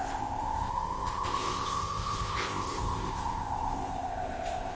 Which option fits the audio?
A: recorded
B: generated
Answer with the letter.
B